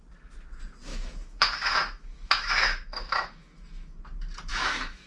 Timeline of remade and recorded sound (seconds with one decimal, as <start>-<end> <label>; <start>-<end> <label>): 0.0-0.9 recorded; 0.9-4.0 remade; 4.0-4.5 recorded; 4.5-5.1 remade